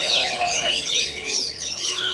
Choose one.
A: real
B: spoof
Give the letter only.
B